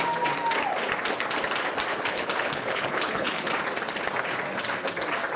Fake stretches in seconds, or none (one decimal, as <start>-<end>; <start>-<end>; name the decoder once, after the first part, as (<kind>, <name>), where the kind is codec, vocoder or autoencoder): 1.9-3.5 (codec, HILCodec)